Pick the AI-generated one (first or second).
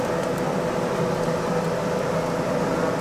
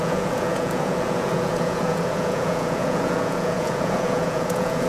second